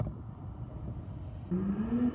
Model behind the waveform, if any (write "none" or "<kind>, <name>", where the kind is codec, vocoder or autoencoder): none